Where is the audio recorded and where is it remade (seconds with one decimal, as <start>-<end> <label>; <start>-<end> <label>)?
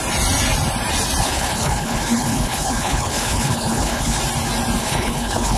0.0-1.2 recorded; 1.2-4.2 remade; 4.2-4.8 recorded; 4.8-5.6 remade